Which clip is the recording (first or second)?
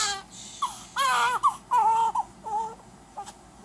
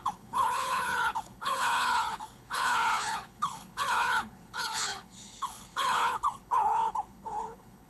first